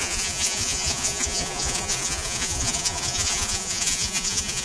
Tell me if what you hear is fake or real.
fake